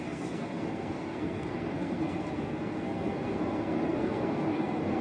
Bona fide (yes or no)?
no